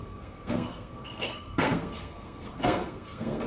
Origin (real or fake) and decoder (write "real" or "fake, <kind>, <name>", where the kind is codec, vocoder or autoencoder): fake, codec, SNAC